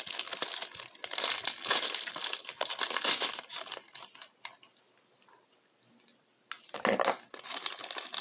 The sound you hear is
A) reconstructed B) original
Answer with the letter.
B